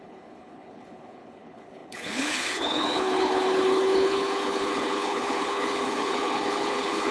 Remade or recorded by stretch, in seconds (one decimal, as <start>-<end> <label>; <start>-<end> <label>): 0.0-7.1 remade